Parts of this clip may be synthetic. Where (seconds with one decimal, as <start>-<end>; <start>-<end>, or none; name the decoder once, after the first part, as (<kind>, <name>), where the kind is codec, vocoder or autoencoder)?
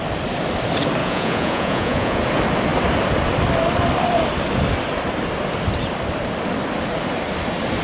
1.0-2.2 (vocoder, Vocos)